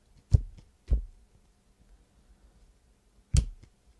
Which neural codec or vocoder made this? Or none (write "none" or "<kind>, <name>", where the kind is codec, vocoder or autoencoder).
none